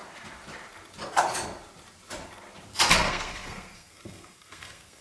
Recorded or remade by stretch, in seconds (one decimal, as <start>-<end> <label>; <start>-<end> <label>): 0.0-3.0 recorded; 3.0-5.0 remade